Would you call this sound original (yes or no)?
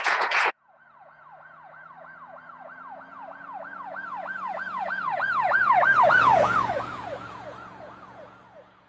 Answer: no